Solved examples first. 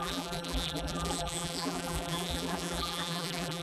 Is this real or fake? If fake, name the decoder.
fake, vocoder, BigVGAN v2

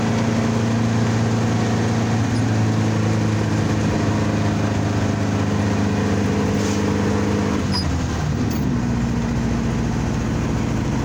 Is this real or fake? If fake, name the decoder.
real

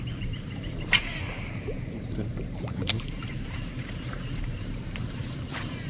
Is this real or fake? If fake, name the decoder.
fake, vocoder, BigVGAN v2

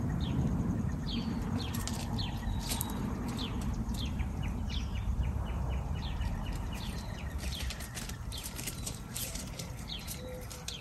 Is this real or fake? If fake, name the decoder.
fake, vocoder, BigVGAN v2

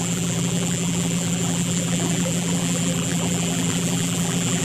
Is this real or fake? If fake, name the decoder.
fake, vocoder, BigVGAN v2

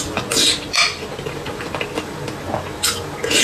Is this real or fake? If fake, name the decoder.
real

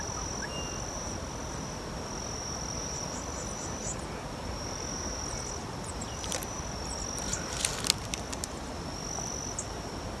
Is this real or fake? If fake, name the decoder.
real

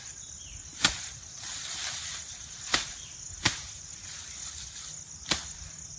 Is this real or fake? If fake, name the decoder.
real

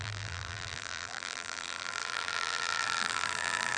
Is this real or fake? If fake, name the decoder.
fake, vocoder, BigVGAN v2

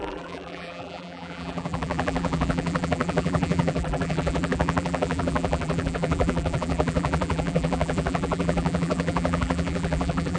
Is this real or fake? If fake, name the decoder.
fake, vocoder, BigVGAN v2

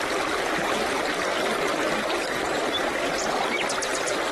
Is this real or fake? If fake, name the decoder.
fake, vocoder, BigVGAN v2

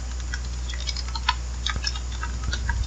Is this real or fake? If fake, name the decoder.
real